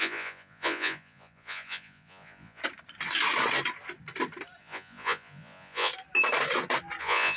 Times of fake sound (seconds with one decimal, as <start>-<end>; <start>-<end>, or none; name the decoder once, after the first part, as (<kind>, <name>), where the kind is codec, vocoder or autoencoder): 0.0-2.6 (vocoder, Vocos); 4.6-5.9; 7.0-7.4

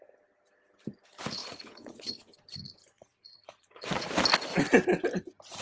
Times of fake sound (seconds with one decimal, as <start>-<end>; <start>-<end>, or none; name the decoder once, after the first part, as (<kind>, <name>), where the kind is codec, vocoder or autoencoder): 1.4-2.1 (vocoder, Vocos); 2.8-4.1

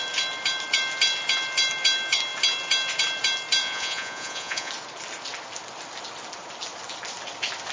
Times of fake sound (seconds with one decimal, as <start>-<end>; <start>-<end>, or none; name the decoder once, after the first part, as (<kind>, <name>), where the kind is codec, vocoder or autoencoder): 3.6-4.7 (vocoder, Vocos)